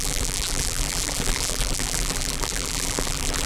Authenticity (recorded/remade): remade